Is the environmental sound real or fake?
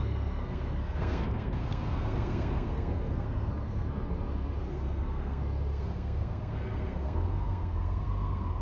fake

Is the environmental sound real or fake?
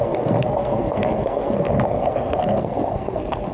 fake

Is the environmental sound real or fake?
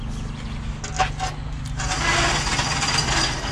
real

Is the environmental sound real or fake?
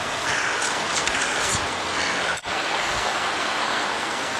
fake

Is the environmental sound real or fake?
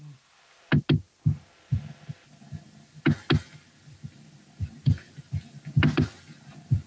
real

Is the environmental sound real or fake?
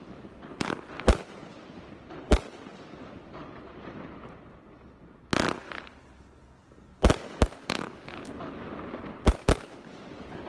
real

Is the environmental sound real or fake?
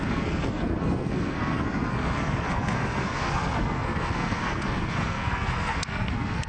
fake